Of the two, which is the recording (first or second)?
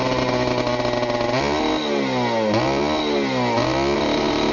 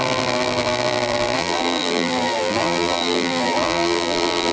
first